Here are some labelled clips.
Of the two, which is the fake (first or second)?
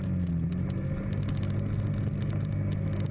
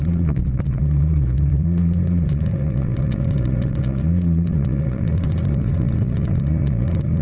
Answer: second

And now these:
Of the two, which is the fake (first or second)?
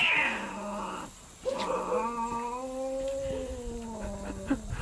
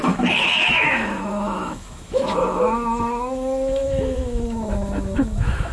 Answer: second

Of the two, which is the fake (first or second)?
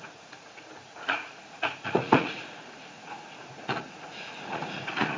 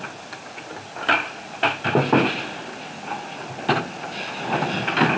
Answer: first